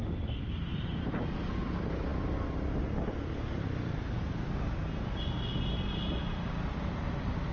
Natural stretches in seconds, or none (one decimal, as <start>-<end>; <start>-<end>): 0.0-7.5